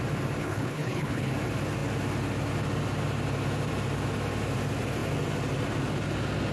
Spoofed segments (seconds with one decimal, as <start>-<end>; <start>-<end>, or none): 0.4-1.3